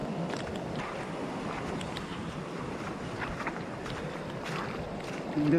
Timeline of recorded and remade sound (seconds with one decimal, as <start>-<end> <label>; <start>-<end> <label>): 0.0-2.1 recorded; 2.1-2.8 remade; 2.8-5.6 recorded